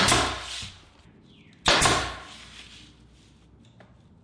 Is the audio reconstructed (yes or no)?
no